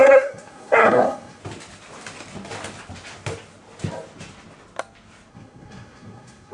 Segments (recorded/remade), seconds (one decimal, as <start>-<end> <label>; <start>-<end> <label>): 0.0-1.4 remade; 1.4-5.3 recorded; 5.3-6.5 remade